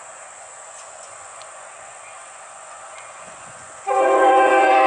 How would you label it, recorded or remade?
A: remade